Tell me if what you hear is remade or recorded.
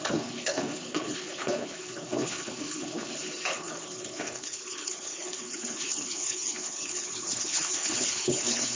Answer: remade